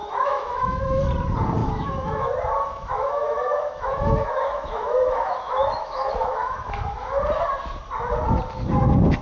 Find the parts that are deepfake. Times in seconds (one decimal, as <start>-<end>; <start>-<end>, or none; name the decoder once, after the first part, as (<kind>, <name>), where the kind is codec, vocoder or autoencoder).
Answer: 0.0-1.0 (autoencoder, DAC-VAE); 1.6-2.3; 2.7-7.2